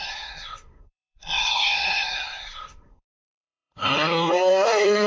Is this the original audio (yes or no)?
no